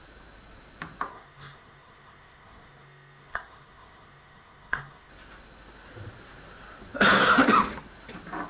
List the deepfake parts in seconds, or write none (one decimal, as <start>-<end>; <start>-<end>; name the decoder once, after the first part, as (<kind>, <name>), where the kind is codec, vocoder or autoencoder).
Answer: 1.1-5.1 (codec, SNAC)

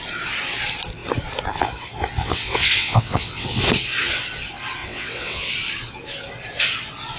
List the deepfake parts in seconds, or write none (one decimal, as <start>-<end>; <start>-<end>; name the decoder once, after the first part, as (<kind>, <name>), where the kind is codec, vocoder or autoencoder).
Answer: 2.2-3.6 (vocoder, WaveNeXt); 4.8-5.5